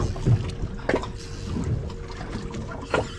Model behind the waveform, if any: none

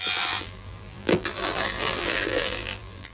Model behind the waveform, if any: vocoder, BigVGAN v2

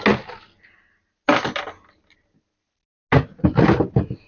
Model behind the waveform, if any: none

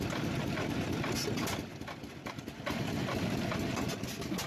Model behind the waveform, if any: none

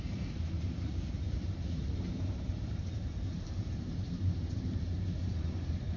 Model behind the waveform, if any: vocoder, BigVGAN v2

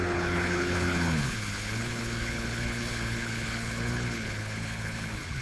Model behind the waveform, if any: codec, HILCodec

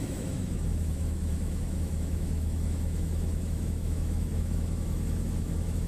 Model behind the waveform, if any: autoencoder, DAC-VAE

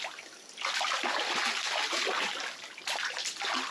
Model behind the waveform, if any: none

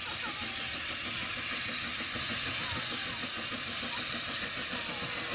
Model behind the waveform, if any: none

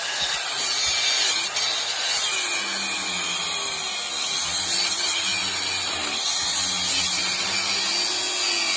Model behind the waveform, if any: none